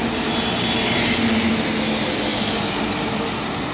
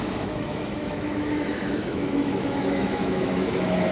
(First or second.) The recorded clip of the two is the first